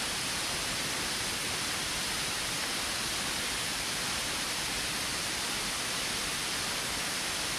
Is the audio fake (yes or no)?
no